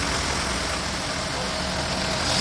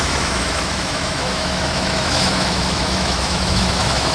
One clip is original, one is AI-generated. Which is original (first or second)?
first